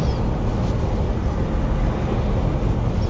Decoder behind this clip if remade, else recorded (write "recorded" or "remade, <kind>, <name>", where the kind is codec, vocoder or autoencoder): recorded